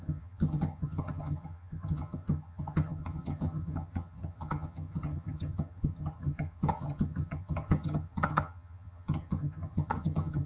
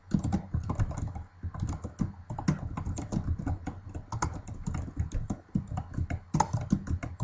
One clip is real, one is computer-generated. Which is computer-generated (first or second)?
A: first